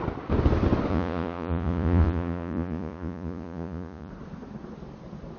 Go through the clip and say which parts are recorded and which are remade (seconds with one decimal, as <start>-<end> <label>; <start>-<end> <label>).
0.0-0.9 recorded; 0.9-4.1 remade; 4.1-5.4 recorded

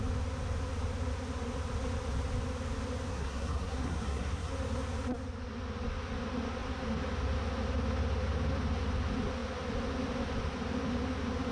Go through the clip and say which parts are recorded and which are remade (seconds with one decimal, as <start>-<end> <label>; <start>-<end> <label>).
0.0-3.1 recorded; 3.1-4.5 remade; 4.5-11.5 recorded

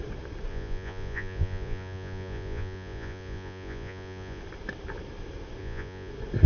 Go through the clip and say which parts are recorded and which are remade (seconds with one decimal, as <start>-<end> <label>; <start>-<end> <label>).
0.0-0.5 recorded; 0.5-4.4 remade; 4.4-5.6 recorded; 5.6-6.1 remade; 6.1-6.5 recorded

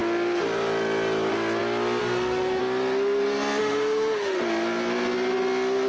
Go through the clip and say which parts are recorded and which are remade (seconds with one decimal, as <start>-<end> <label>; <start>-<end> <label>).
0.0-2.0 recorded; 2.0-2.6 remade; 2.6-3.6 recorded; 3.6-4.4 remade; 4.4-5.9 recorded